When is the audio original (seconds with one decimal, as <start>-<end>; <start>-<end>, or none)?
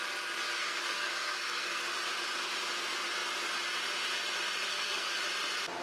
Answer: 0.0-0.6; 1.8-4.7; 5.2-5.8